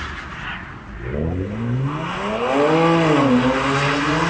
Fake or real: real